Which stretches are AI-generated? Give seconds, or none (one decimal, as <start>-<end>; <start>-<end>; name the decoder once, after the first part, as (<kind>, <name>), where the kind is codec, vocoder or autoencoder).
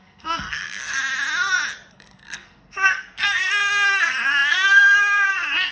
0.0-1.0 (codec, SNAC); 1.9-5.7